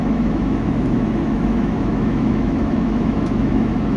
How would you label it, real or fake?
fake